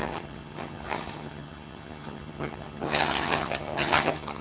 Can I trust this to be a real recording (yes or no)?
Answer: no